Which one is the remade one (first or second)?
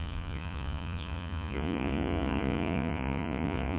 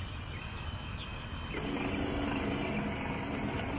first